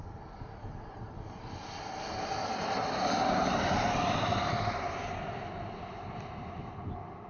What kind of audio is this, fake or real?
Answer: real